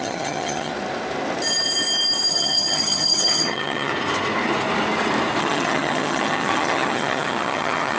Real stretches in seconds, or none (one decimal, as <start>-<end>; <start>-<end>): 0.7-2.3; 3.9-5.4